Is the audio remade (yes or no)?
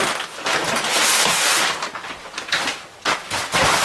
no